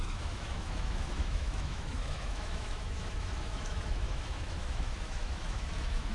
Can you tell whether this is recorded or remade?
remade